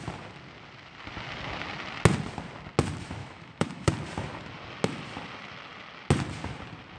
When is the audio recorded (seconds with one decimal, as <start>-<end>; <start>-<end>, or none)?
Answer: 0.0-3.2; 3.9-7.0